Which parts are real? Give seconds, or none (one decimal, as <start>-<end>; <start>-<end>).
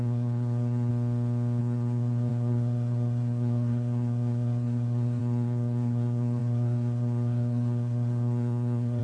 0.9-1.6